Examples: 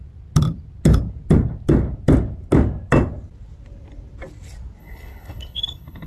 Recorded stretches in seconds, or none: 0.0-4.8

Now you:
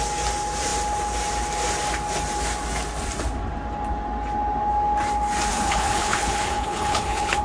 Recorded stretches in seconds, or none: 0.0-5.5

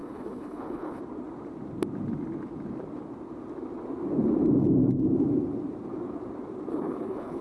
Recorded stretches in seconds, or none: 1.0-6.7

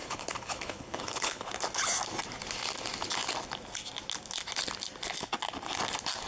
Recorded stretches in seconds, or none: 1.5-6.3

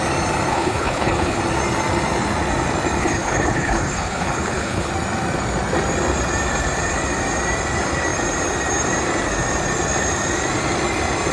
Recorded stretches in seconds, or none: 0.0-0.5; 1.4-3.0; 4.9-11.3

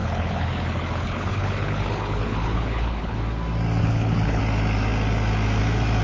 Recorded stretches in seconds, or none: 3.2-3.8; 4.4-6.0